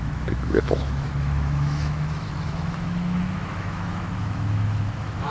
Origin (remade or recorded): remade